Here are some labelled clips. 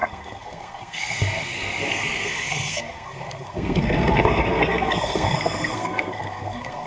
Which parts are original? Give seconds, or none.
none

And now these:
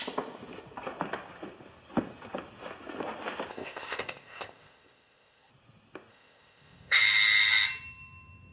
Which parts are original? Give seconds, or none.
0.0-3.5; 5.5-6.1; 7.0-8.5

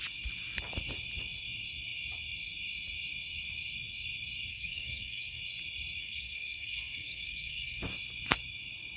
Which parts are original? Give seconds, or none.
0.0-4.5; 5.4-6.0; 7.8-9.0

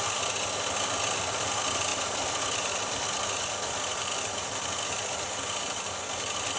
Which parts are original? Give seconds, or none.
0.0-3.9; 6.0-6.6

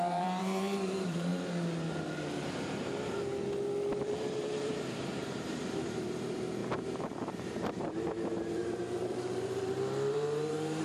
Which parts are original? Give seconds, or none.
1.3-4.0